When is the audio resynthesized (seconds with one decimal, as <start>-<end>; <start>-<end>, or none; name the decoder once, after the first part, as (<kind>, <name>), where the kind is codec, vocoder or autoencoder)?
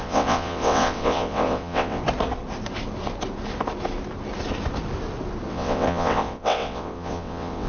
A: 0.0-2.0 (vocoder, WaveNeXt); 5.5-7.7